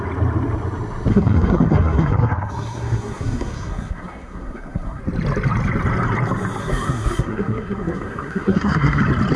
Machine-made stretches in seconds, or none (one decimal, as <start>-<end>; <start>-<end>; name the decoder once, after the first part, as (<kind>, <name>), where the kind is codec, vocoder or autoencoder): 1.1-5.0 (codec, SNAC); 6.6-9.0